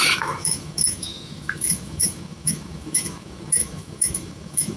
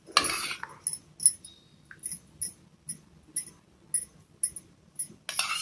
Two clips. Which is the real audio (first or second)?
second